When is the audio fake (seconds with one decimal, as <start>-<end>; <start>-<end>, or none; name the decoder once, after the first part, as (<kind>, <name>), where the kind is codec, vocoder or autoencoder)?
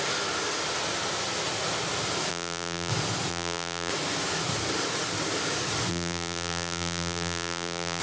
2.3-2.9 (vocoder, BigVGAN v2); 3.3-3.9; 5.9-8.0